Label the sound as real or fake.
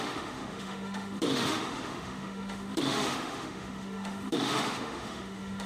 fake